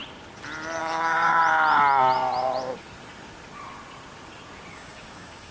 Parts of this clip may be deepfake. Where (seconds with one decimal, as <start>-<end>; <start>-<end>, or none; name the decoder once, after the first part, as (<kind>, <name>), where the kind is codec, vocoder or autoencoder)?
0.8-1.4 (codec, DAC); 4.7-5.5